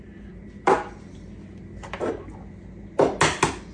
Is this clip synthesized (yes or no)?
no